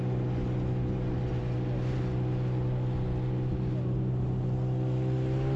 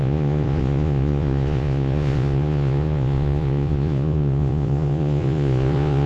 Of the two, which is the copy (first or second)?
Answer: second